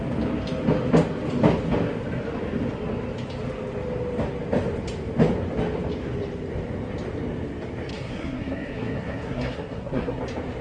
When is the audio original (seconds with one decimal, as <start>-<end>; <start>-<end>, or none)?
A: 0.0-7.9; 10.2-10.6